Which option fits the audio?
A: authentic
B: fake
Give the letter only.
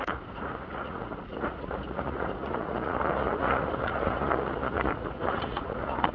B